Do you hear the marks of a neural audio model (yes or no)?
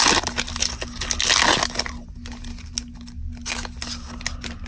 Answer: no